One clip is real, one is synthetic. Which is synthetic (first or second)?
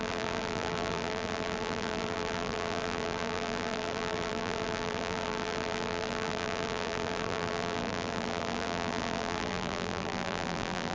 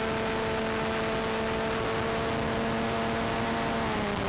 first